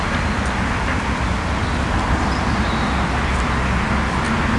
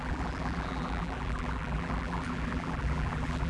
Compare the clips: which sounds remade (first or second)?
second